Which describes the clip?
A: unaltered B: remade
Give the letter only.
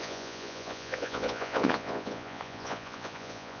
B